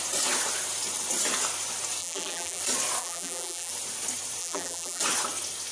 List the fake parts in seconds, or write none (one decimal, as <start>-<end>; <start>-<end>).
2.0-2.6; 3.0-3.7; 4.4-5.0